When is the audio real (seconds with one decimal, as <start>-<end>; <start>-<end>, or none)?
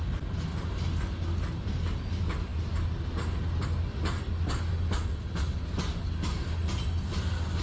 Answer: 0.0-7.6